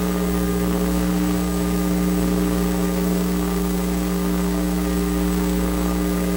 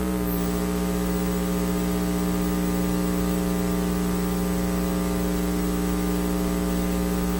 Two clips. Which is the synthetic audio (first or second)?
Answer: first